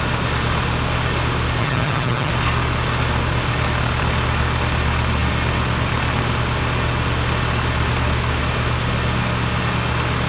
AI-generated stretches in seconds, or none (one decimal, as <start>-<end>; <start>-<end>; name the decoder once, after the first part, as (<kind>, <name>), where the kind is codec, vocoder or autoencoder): 1.6-2.3 (vocoder, HiFi-GAN)